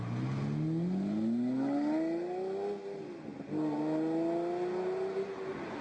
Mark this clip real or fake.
real